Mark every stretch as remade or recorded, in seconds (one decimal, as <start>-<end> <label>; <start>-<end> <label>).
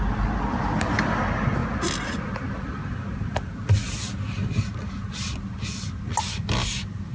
0.0-7.1 recorded